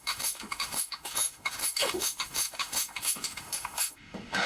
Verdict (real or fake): fake